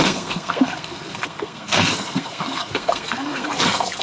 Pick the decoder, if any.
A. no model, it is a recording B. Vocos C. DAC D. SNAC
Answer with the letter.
D